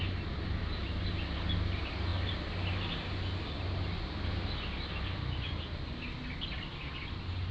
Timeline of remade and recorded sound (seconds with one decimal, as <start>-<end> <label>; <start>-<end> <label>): 0.0-7.5 recorded